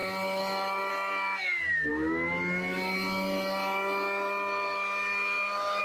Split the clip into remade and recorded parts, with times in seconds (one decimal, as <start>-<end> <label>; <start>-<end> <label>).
0.0-5.8 recorded